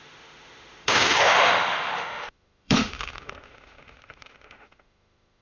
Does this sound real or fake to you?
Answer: fake